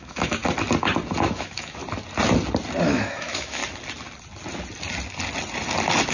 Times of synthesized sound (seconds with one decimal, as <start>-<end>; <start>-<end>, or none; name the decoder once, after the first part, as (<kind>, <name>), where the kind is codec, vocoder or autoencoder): 0.0-0.4 (autoencoder, DAC-VAE); 1.2-1.8; 2.8-3.6